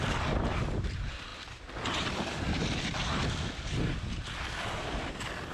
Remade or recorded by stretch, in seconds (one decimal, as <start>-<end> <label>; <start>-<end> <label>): 0.0-5.5 recorded